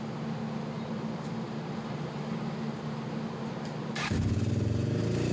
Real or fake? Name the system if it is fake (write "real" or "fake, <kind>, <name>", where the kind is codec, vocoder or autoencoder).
real